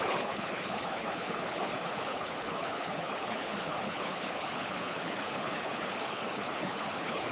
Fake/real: fake